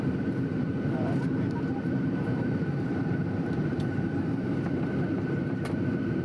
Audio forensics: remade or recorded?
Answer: remade